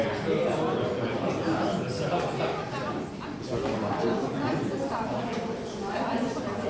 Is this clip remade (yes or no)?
no